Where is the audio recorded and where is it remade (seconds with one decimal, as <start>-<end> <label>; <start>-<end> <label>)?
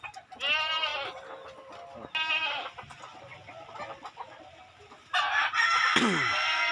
0.0-6.7 recorded